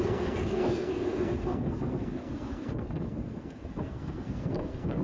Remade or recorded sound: remade